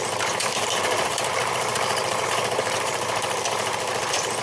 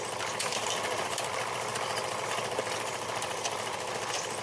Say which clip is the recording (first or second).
second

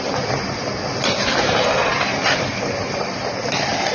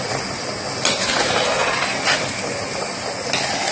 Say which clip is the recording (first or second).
second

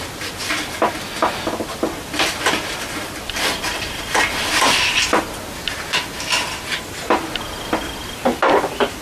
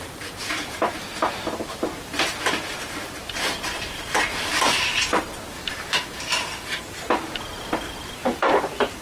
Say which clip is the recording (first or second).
first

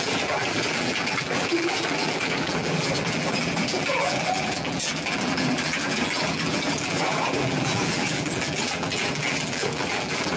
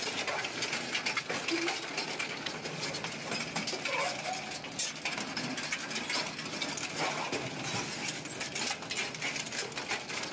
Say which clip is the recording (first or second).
second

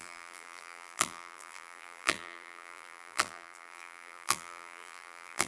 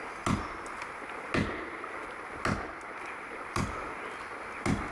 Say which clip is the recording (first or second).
second